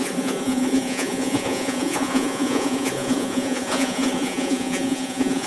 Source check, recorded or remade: remade